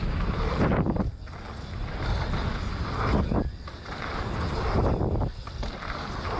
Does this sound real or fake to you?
real